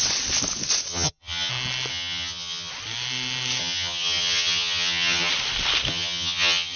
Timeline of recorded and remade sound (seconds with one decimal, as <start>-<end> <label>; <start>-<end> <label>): 0.0-0.9 recorded; 0.9-1.5 remade; 1.5-1.9 recorded; 1.9-2.7 remade; 2.7-3.6 recorded; 3.6-5.3 remade; 5.3-5.9 recorded; 5.9-6.8 remade